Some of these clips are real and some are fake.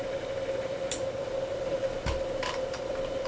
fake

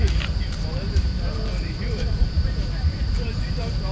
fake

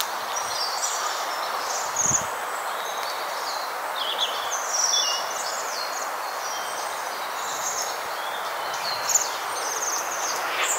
real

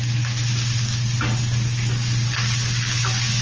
real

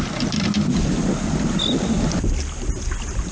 real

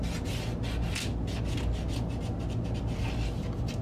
real